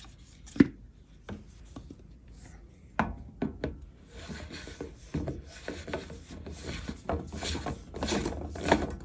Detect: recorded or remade recorded